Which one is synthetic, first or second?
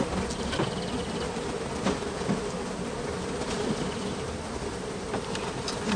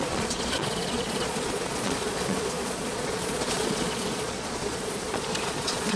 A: second